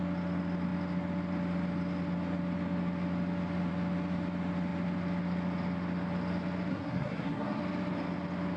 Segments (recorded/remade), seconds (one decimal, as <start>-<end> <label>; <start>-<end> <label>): 0.0-6.7 recorded; 6.7-7.6 remade; 7.6-8.6 recorded